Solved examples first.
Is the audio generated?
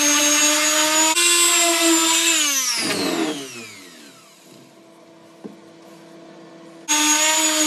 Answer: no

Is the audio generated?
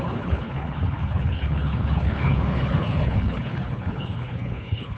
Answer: yes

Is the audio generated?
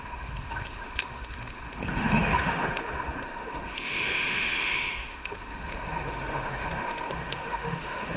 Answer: yes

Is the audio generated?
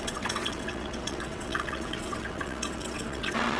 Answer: yes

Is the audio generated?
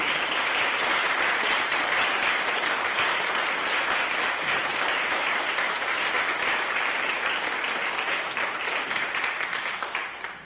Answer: yes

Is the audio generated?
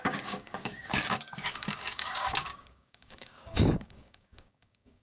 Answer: yes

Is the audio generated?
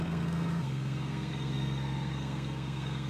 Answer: yes